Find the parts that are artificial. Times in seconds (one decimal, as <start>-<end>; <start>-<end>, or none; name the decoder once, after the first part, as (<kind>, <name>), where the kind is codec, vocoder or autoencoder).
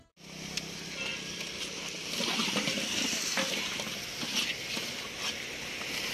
1.1-4.3 (vocoder, BigVGAN v2)